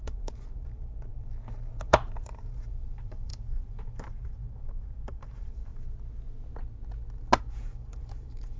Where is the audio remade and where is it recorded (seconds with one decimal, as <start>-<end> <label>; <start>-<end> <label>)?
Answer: 0.0-5.7 remade; 5.7-7.4 recorded; 7.4-8.6 remade